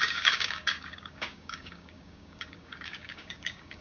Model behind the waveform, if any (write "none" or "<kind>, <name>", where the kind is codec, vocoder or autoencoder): codec, DAC